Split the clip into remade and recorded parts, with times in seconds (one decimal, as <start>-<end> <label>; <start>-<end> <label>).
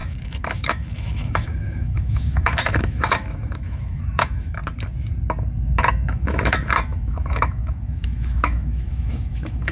0.0-4.6 remade; 4.6-5.9 recorded; 5.9-9.7 remade